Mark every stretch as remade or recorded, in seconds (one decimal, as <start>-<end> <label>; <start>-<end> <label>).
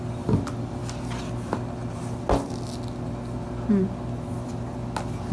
0.0-5.3 recorded